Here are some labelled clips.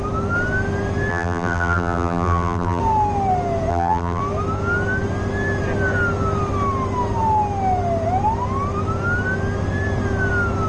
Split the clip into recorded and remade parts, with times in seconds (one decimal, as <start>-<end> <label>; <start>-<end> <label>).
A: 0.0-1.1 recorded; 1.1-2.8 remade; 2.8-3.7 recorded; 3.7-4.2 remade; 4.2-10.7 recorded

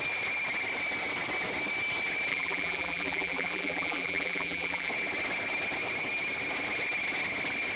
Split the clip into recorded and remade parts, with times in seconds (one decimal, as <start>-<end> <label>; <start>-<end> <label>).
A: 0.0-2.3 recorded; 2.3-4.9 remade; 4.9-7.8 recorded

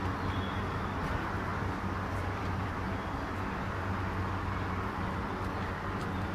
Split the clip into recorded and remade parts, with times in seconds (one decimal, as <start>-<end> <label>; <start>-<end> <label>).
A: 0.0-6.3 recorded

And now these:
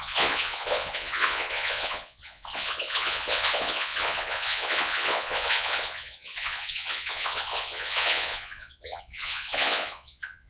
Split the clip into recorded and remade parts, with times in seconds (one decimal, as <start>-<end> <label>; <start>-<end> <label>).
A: 0.0-10.5 remade

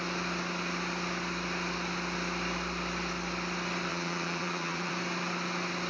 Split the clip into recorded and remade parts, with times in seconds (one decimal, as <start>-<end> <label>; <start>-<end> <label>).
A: 0.0-3.9 recorded; 3.9-4.9 remade; 4.9-5.9 recorded